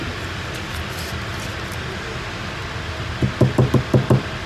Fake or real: real